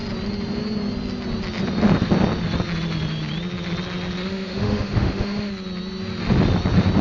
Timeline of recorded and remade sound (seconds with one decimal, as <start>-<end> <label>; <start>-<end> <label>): 0.0-4.2 recorded; 4.2-5.5 remade; 5.5-7.0 recorded